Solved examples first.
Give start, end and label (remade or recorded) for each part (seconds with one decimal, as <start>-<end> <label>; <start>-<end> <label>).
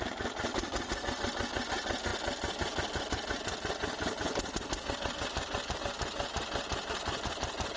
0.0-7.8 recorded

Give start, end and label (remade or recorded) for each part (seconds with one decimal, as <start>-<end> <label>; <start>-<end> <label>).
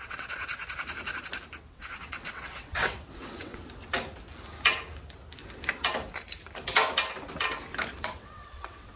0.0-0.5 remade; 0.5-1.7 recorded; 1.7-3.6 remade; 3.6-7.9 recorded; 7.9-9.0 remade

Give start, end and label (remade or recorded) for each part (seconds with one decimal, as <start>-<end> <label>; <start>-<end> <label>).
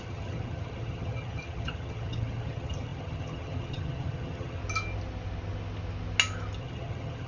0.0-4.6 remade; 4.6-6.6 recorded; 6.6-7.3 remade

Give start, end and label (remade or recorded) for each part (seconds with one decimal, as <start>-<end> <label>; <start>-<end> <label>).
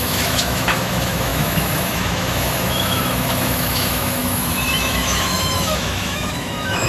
0.0-6.9 remade